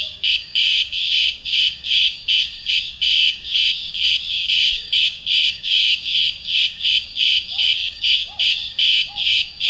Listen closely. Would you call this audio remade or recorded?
remade